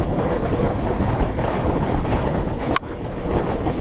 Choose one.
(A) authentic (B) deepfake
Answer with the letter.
B